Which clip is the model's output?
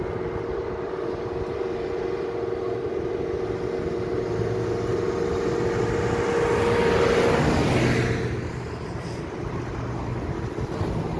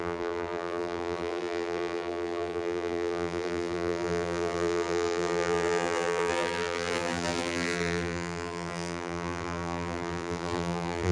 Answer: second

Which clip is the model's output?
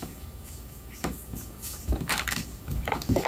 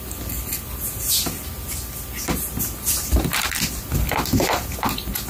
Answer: first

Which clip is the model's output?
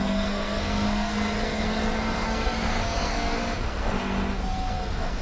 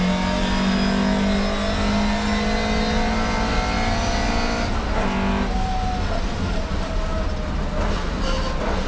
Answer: first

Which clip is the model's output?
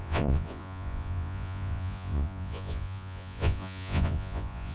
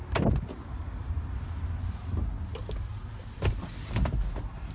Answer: first